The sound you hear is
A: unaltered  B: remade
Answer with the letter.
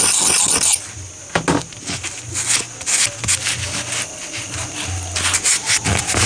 A